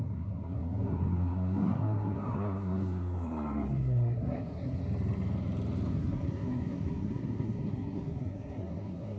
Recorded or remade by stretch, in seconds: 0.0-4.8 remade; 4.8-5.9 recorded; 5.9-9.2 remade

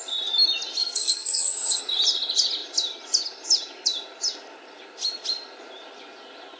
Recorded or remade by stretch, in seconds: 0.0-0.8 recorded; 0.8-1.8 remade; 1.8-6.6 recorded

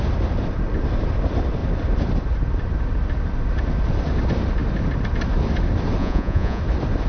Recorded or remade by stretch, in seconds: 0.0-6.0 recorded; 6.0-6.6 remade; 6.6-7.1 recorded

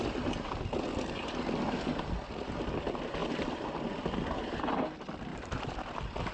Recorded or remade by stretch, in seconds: 0.0-3.2 recorded; 3.2-3.7 remade; 3.7-5.3 recorded; 5.3-6.3 remade

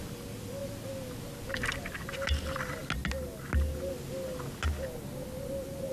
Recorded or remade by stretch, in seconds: 0.0-0.6 remade; 0.6-2.4 recorded; 2.4-2.8 remade; 2.8-5.9 recorded

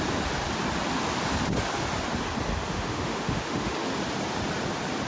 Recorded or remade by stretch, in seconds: 0.0-2.7 recorded; 2.7-3.7 remade; 3.7-5.1 recorded

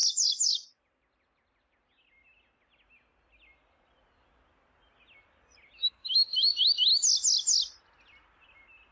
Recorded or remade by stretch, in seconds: 0.0-0.8 remade; 0.8-5.8 recorded; 5.8-6.5 remade; 6.5-8.9 recorded

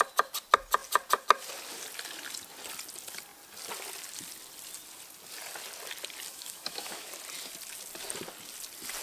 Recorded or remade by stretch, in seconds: 0.0-6.3 recorded; 6.3-7.1 remade; 7.1-9.0 recorded